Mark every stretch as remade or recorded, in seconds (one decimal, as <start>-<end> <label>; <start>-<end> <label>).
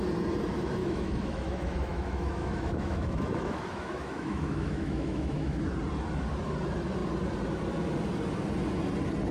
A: 0.0-0.8 recorded; 0.8-5.6 remade; 5.6-9.3 recorded